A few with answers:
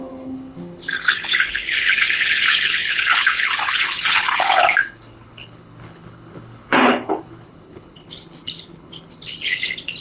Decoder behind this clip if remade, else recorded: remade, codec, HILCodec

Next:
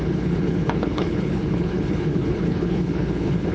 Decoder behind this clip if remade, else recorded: remade, codec, HILCodec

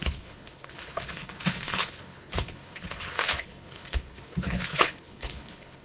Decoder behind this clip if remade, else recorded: remade, codec, HILCodec